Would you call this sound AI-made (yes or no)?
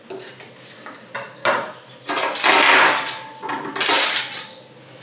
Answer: no